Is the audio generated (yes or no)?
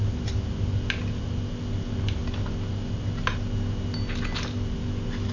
no